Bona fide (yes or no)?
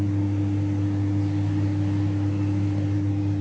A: yes